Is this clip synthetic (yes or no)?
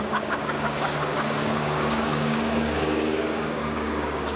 yes